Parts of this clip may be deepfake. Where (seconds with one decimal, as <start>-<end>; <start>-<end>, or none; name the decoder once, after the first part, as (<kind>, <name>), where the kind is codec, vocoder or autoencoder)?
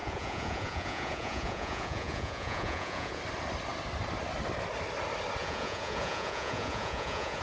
0.0-3.2 (vocoder, Vocos); 5.4-7.4